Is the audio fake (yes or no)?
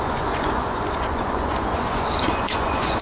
yes